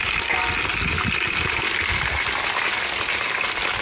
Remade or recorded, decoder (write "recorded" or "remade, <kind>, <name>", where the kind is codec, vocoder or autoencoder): recorded